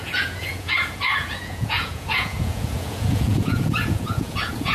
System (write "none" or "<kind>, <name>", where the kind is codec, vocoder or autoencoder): vocoder, Vocos